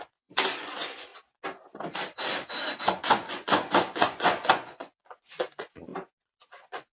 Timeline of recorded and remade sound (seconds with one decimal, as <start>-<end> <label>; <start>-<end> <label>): 0.0-1.1 remade; 1.1-2.8 recorded; 2.8-5.9 remade; 5.9-6.5 recorded; 6.5-7.0 remade

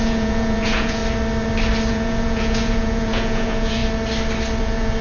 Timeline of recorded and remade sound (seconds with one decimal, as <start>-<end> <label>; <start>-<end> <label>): 0.0-1.0 remade; 1.0-1.9 recorded; 1.9-3.8 remade; 3.8-4.6 recorded; 4.6-5.0 remade

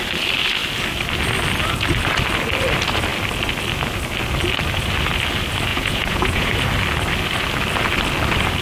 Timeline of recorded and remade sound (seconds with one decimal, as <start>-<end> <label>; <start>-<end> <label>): 0.0-5.7 recorded; 5.7-6.5 remade; 6.5-8.6 recorded

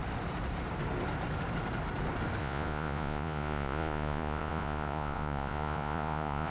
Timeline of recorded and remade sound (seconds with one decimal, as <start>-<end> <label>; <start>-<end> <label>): 0.0-2.4 recorded; 2.4-6.5 remade

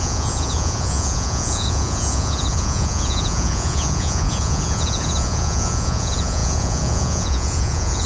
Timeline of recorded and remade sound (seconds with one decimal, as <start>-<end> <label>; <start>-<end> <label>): 0.0-8.1 remade